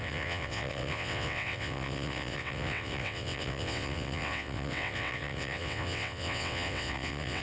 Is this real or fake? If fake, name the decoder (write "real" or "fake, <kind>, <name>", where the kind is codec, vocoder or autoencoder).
fake, vocoder, WaveNeXt